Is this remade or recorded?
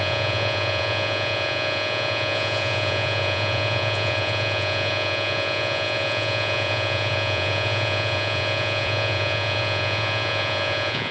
remade